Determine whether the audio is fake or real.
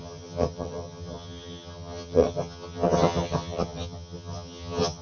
fake